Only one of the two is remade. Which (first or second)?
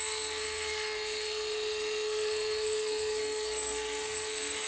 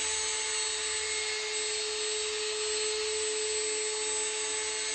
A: first